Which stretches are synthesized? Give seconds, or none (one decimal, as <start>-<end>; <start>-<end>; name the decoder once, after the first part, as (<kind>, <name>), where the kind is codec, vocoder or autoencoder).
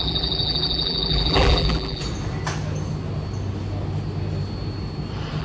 0.0-2.0 (vocoder, BigVGAN v2)